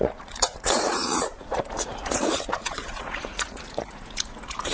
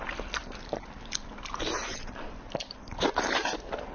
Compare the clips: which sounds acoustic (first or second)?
second